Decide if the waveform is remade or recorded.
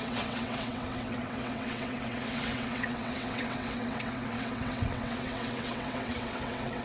remade